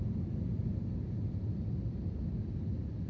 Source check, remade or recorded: recorded